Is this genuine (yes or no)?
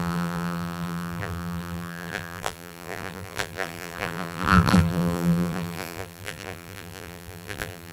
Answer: no